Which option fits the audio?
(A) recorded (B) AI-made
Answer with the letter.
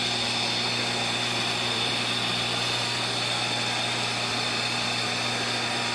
B